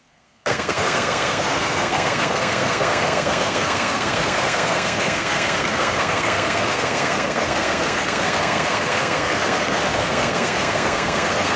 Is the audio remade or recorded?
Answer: remade